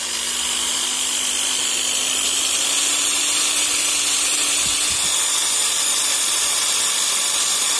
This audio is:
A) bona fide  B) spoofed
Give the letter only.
A